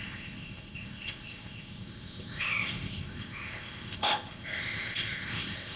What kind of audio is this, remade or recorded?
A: remade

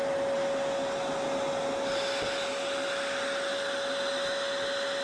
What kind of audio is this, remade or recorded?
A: recorded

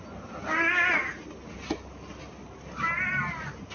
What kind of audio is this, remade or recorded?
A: recorded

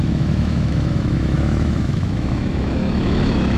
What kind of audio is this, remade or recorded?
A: remade